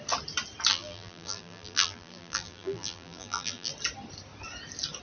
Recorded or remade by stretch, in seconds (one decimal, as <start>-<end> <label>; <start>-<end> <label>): 0.0-0.7 recorded; 0.7-3.7 remade; 3.7-5.0 recorded